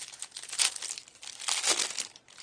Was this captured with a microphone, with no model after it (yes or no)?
yes